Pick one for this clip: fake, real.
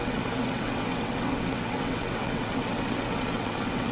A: fake